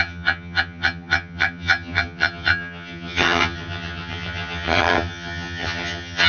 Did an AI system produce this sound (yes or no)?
yes